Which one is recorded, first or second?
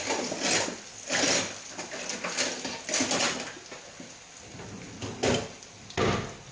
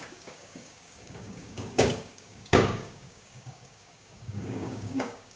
first